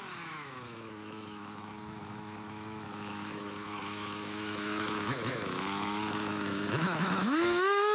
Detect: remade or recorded remade